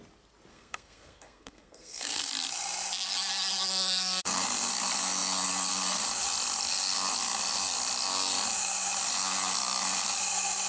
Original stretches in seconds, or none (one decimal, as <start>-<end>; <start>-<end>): 0.0-0.5; 2.3-3.7; 4.4-10.7